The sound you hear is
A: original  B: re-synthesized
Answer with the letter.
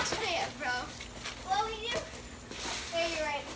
A